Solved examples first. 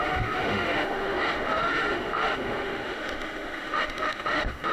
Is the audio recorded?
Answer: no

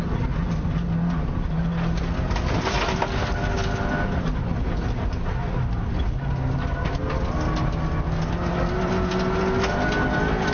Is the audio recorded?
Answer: yes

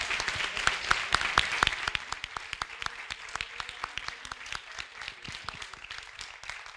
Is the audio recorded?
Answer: yes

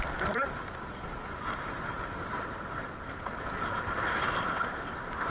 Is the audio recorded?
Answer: yes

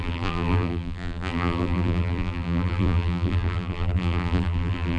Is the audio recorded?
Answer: no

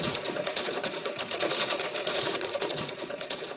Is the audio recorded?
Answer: no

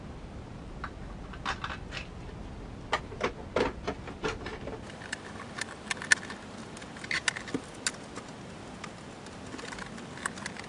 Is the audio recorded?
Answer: yes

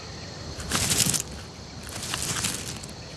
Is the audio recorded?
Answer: yes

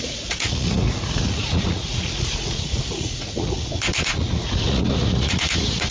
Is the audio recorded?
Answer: no